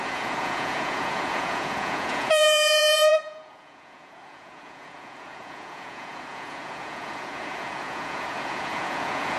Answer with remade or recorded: remade